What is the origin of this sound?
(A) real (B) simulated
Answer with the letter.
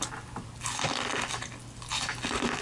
A